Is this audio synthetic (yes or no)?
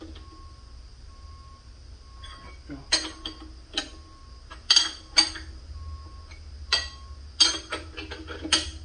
no